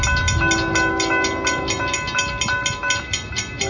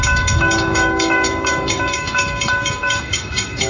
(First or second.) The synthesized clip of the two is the second